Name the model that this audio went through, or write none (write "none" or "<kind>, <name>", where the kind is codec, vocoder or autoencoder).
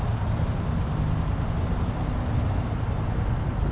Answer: none